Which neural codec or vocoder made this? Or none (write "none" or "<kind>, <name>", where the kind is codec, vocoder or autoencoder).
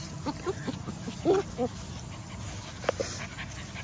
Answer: none